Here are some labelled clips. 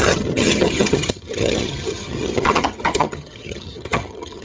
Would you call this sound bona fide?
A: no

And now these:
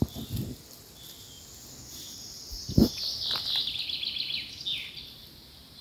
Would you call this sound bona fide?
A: yes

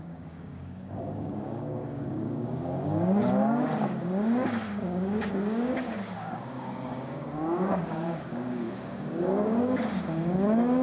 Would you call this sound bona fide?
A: no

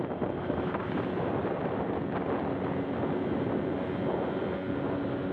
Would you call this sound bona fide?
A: yes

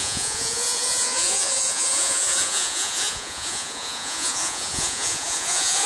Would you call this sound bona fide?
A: no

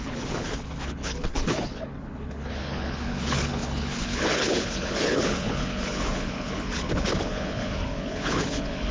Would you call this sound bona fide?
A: no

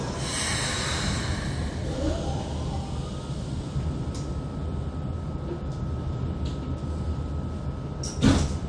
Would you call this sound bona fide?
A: yes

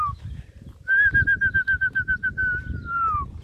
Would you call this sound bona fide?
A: yes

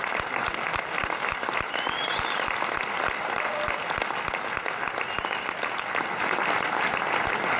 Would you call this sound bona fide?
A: yes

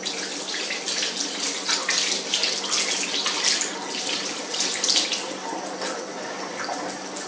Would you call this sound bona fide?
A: yes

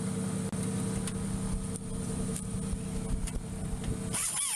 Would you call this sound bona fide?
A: yes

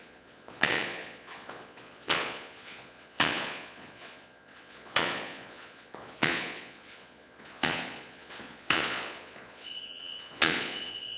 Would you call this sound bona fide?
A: no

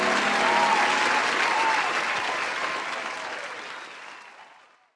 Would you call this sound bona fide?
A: yes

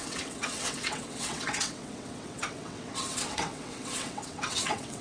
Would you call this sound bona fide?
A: no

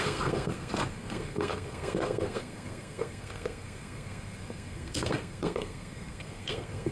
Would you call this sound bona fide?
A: no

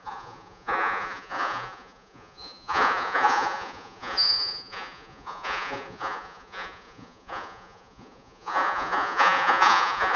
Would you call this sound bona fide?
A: no